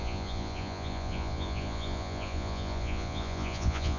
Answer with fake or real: fake